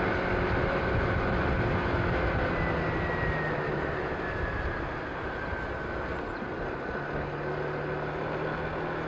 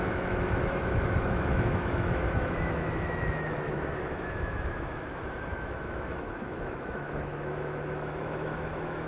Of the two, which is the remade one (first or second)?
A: second